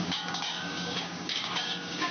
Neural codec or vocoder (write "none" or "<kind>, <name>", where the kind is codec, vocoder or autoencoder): codec, DAC